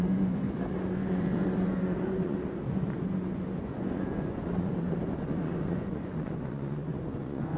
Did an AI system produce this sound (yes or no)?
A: yes